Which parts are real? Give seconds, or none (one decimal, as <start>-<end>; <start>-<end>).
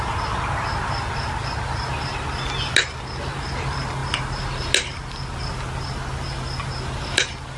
0.0-7.6